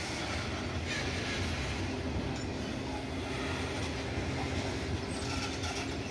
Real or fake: real